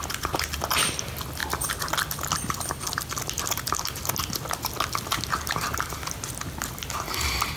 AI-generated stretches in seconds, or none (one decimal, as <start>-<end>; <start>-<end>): none